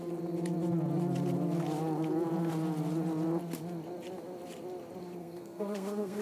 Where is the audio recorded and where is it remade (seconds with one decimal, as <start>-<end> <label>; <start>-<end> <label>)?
0.0-5.2 recorded; 5.2-6.2 remade